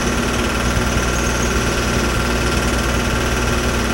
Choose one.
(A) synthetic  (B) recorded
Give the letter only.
B